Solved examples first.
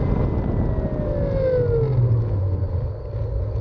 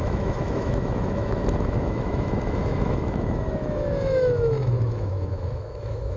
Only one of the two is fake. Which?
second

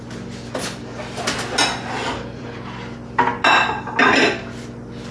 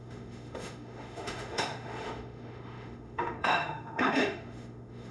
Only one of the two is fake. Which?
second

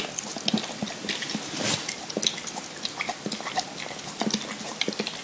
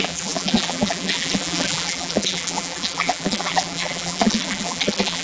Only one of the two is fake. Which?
second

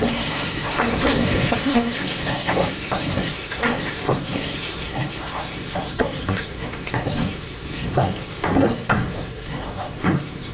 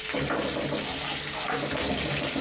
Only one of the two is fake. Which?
first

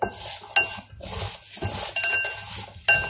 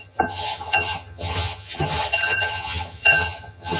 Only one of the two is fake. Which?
second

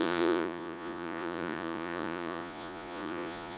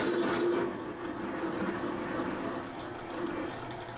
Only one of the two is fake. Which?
first